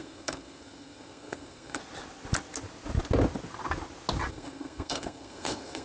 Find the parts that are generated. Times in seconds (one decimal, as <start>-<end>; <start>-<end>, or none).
0.0-1.8; 4.3-5.8